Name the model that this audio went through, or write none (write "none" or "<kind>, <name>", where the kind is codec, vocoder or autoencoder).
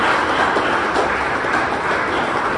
none